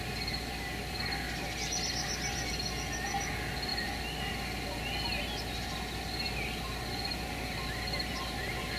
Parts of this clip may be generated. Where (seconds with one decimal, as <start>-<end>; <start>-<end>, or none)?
none